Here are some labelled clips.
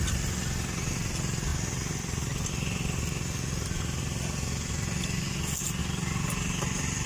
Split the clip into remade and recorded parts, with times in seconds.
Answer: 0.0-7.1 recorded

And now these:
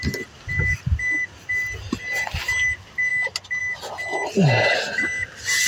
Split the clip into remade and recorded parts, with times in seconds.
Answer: 0.0-5.7 recorded

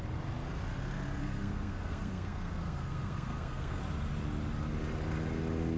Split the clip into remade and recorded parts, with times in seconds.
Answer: 0.0-1.2 recorded; 1.2-3.8 remade; 3.8-5.8 recorded